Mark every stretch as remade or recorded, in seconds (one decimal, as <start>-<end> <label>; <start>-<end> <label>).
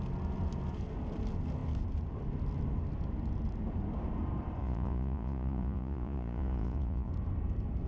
0.0-4.6 recorded; 4.6-7.1 remade; 7.1-7.9 recorded